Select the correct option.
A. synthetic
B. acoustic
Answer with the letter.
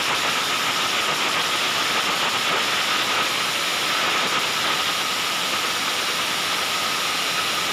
B